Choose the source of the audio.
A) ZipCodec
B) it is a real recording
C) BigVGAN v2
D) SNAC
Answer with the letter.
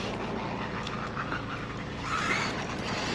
B